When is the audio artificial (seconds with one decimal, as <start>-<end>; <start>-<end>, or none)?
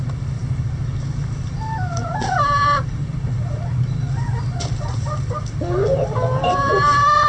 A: 0.0-7.3